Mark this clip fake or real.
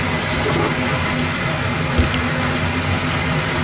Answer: real